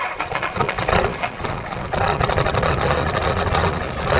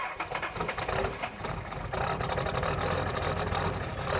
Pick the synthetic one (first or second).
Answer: first